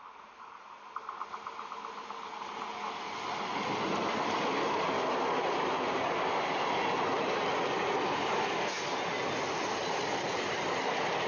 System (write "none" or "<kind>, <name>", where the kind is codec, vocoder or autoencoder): none